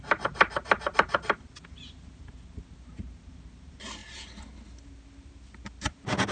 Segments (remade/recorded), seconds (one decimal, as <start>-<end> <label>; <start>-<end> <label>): 0.0-6.3 recorded